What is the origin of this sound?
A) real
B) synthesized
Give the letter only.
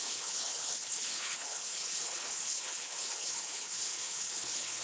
B